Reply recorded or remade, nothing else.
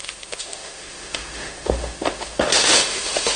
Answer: remade